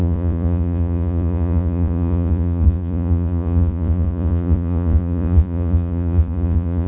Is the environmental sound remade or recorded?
remade